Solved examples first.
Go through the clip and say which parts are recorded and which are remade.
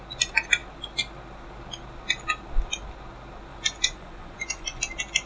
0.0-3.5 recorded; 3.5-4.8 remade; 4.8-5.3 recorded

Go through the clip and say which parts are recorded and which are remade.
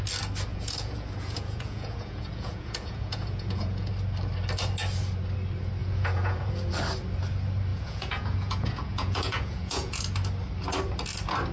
0.0-0.5 recorded; 0.5-3.9 remade; 3.9-5.8 recorded; 5.8-6.7 remade; 6.7-7.7 recorded; 7.7-10.0 remade; 10.0-11.5 recorded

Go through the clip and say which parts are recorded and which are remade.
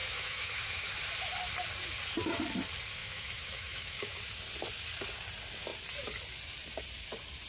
0.0-1.0 remade; 1.0-3.0 recorded; 3.0-4.2 remade; 4.2-7.5 recorded